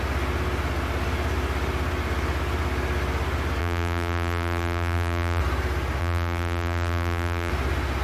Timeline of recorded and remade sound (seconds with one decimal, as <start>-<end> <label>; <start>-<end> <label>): 0.0-3.6 recorded; 3.6-5.4 remade; 5.4-6.0 recorded; 6.0-7.5 remade; 7.5-8.0 recorded

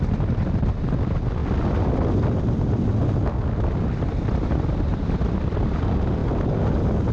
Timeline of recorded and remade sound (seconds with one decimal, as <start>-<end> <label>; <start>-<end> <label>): 0.0-1.4 remade; 1.4-2.2 recorded; 2.2-2.9 remade; 2.9-4.5 recorded; 4.5-6.2 remade; 6.2-7.1 recorded